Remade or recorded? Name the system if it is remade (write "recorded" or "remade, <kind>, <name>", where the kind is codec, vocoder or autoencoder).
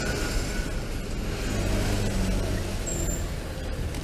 recorded